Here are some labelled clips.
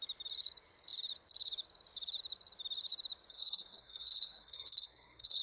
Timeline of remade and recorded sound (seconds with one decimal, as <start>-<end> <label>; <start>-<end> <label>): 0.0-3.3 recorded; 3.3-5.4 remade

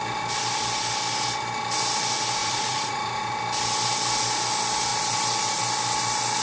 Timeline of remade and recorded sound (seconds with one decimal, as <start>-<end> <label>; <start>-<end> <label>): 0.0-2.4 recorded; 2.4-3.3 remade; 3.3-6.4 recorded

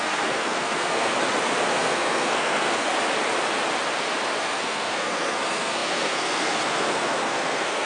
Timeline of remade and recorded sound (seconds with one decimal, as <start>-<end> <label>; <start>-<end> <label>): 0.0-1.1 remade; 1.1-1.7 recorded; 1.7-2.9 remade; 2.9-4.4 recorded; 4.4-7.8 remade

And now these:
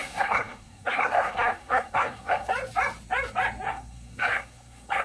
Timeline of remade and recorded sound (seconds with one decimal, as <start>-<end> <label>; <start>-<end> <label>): 0.0-2.5 remade; 2.5-3.7 recorded; 3.7-5.0 remade

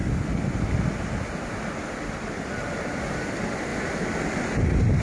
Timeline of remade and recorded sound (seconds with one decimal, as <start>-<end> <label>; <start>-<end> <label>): 0.0-5.0 recorded

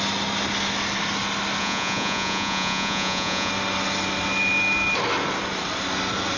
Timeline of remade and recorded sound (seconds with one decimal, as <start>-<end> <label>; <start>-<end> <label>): 0.0-1.6 recorded; 1.6-3.5 remade; 3.5-6.4 recorded